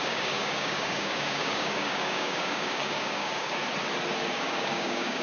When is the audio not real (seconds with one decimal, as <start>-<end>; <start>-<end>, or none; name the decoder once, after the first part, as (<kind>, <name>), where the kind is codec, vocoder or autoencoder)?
0.0-3.6 (codec, DAC); 4.3-5.2